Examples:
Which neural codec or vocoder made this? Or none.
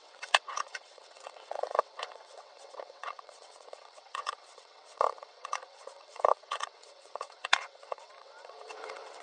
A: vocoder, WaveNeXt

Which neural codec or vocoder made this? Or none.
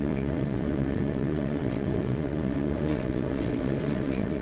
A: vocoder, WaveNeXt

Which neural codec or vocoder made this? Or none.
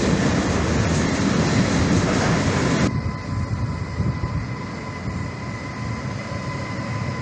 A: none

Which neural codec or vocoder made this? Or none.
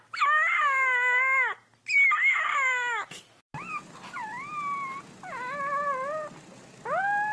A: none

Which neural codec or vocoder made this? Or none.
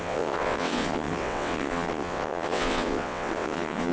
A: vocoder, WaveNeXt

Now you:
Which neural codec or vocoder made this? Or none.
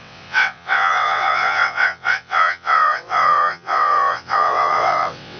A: vocoder, WaveNeXt